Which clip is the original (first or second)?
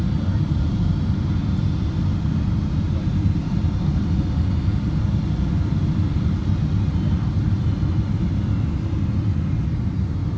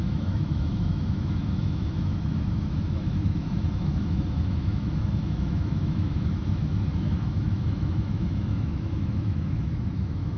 first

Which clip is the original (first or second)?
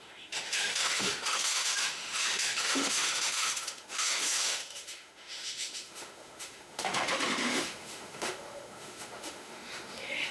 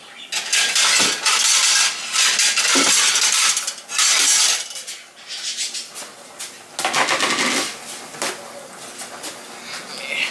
second